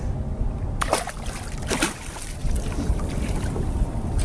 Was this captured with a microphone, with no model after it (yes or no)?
yes